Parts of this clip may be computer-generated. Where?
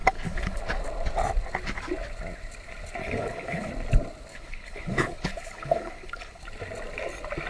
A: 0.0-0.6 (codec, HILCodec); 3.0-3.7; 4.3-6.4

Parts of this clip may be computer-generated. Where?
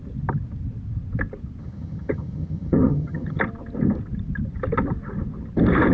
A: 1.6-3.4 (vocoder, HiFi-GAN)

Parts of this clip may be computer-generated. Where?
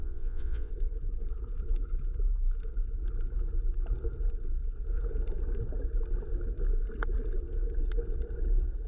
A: 0.0-0.7 (vocoder, Vocos)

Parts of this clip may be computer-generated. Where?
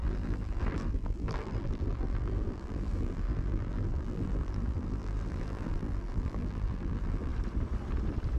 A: 0.0-7.3 (vocoder, BigVGAN v2)